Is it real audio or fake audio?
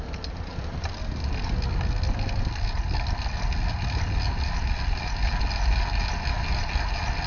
real